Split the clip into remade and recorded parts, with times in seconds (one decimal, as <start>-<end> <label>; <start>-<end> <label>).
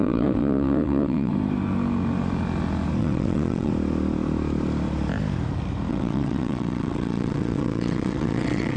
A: 0.0-1.3 remade; 1.3-3.0 recorded; 3.0-3.7 remade; 3.7-5.9 recorded; 5.9-8.8 remade